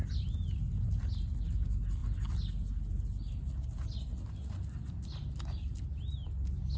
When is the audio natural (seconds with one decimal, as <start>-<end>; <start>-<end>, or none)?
0.0-6.8